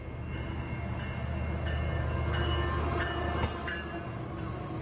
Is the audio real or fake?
real